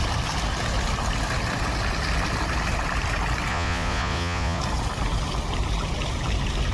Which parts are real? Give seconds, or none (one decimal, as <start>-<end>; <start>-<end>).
0.0-3.5; 4.6-6.7